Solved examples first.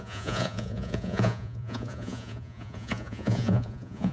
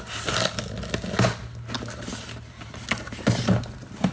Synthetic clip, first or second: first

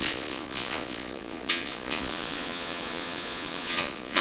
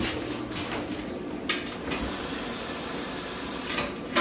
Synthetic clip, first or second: first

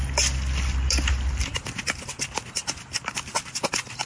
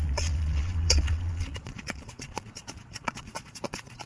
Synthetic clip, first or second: second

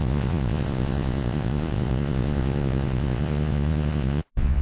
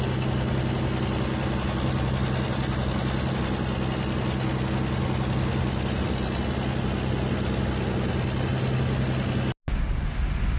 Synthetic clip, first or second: first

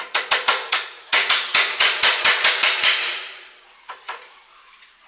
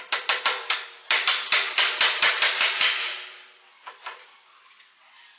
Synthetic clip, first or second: first